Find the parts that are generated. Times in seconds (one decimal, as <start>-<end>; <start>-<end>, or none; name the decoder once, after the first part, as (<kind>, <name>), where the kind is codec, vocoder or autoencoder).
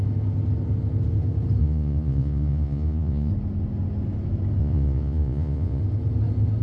1.6-3.3 (vocoder, Vocos); 4.6-5.8